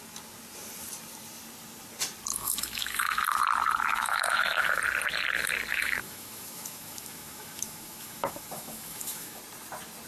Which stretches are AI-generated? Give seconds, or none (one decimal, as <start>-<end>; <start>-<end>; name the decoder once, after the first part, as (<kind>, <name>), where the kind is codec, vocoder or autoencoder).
2.3-3.2 (autoencoder, DAC-VAE); 3.9-4.8; 5.7-9.4